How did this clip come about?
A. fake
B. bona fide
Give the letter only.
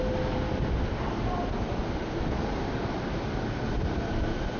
B